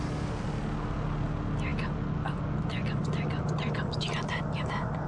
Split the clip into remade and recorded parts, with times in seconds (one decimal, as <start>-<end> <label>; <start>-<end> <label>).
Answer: 0.0-5.1 recorded